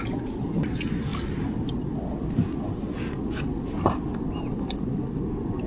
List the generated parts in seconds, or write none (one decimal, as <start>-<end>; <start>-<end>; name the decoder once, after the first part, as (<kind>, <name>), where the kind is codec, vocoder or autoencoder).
none